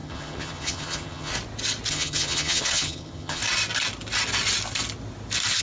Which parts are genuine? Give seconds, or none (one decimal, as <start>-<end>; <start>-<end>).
1.3-1.9; 3.4-5.6

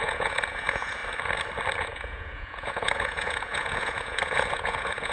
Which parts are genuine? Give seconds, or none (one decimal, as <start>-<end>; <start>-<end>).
1.0-1.8